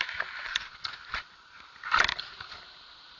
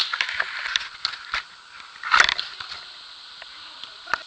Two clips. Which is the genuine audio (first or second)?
second